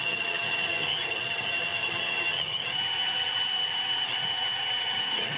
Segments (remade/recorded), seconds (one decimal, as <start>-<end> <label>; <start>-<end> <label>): 0.0-5.4 remade